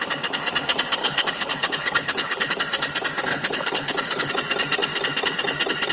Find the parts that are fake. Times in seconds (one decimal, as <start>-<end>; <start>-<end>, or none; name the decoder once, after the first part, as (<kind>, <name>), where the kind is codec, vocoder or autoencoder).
1.0-2.5 (codec, HILCodec); 3.3-4.3